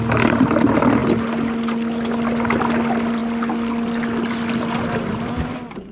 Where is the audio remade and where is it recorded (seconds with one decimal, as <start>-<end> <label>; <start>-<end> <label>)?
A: 0.0-5.9 recorded